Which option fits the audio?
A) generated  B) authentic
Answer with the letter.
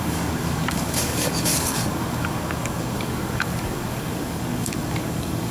A